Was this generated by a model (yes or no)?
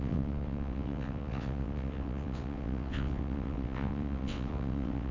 yes